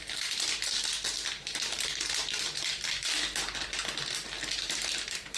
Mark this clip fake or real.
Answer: real